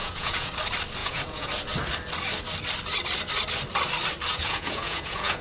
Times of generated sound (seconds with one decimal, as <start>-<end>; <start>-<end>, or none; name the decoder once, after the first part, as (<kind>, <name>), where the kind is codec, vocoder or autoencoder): 0.0-0.5 (vocoder, Vocos); 1.0-1.5; 4.3-5.4